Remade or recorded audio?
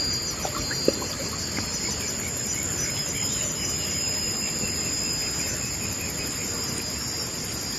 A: recorded